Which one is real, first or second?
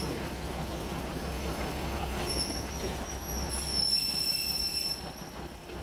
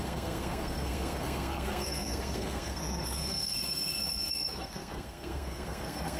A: first